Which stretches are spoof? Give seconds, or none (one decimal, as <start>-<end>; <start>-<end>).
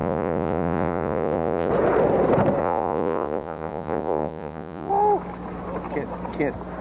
0.0-1.7; 2.6-4.9